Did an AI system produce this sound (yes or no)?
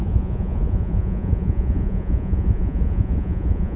yes